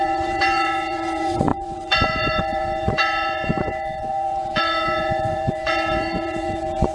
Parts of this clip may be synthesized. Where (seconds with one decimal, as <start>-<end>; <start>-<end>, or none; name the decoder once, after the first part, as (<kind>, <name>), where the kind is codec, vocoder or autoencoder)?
0.0-6.9 (vocoder, Vocos)